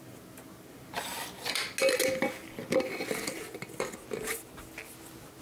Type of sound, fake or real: real